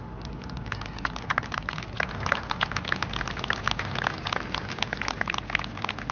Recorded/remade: recorded